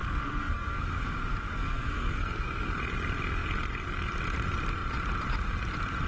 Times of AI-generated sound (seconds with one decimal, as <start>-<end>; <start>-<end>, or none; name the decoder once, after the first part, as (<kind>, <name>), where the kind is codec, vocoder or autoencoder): 0.0-0.8 (codec, SNAC); 1.5-2.7